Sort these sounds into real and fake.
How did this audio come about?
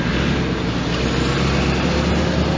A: real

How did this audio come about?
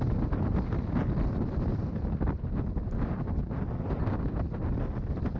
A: real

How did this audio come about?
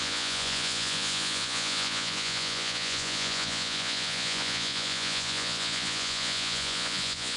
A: fake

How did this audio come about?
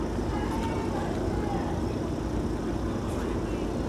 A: real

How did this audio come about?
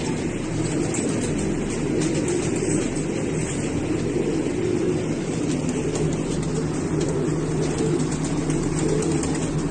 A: real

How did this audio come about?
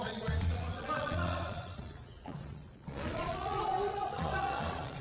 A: fake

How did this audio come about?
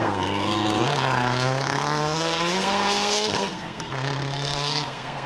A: fake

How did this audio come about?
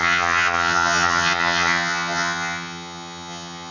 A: fake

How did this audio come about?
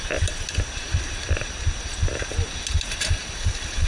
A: real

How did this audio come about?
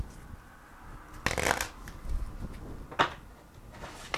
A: real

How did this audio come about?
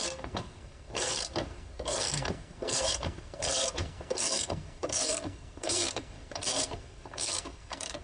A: fake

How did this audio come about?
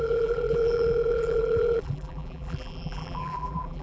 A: fake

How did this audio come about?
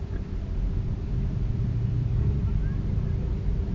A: fake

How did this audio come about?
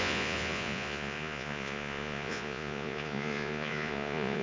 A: fake